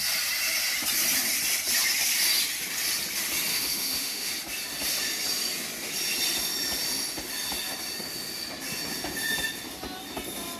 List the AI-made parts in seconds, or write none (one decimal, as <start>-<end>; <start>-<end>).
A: 3.5-4.3